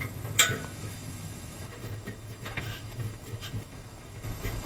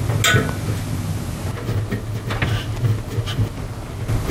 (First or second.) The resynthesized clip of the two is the first